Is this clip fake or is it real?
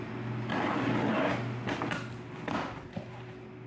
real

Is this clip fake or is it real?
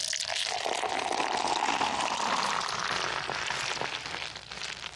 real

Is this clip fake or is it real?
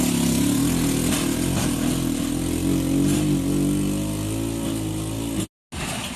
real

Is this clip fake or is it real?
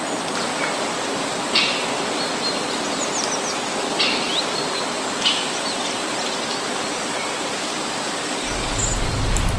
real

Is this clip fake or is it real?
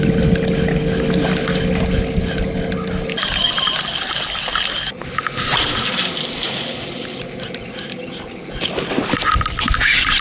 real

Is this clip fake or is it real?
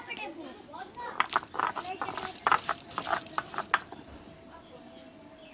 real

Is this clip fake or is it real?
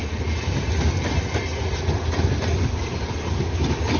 real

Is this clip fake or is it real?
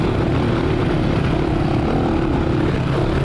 real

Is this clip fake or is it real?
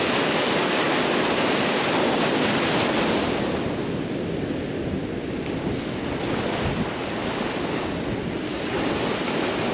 real